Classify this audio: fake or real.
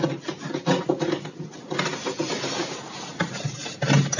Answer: real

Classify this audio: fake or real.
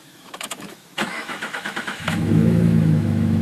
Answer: fake